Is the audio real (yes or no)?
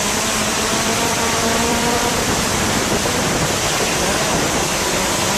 no